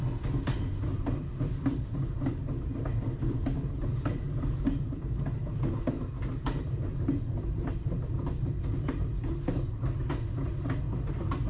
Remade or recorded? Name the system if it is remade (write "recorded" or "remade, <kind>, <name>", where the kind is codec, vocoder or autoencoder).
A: remade, vocoder, BigVGAN v2